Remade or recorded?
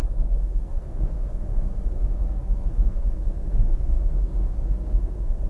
remade